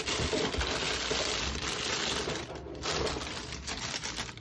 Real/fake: real